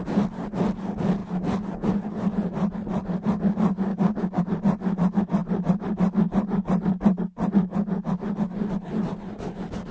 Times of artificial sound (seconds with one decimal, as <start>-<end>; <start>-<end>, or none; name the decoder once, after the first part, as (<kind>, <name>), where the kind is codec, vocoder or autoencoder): 3.9-4.4 (codec, DAC)

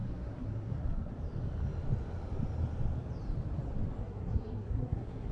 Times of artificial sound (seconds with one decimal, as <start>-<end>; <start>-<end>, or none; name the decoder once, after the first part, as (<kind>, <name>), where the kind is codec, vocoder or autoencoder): 0.0-1.1 (codec, SNAC); 4.0-5.3

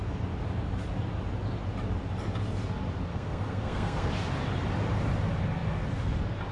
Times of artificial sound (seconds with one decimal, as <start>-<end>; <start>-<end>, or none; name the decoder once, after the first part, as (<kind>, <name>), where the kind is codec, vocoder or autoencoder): 3.1-4.1 (codec, SNAC)

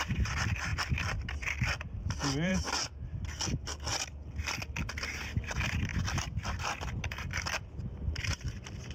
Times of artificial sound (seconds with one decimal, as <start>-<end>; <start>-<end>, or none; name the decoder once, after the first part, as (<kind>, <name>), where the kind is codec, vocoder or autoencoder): 0.0-2.5 (vocoder, BigVGAN v2); 4.9-5.9; 8.2-8.9

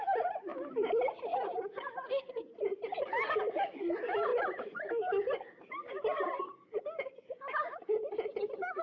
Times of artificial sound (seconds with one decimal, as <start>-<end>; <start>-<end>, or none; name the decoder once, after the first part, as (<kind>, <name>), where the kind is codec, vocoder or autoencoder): 0.5-2.6 (vocoder, BigVGAN v2)

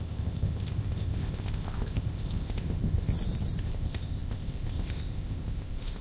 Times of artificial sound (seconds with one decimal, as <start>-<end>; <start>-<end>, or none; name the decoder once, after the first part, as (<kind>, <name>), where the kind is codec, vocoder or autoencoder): 0.0-3.1 (codec, ZipCodec); 3.6-6.0